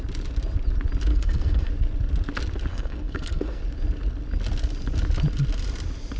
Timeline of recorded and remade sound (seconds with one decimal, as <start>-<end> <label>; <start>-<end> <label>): 0.0-1.1 recorded; 1.1-1.7 remade; 1.7-2.7 recorded; 2.7-3.6 remade; 3.6-6.2 recorded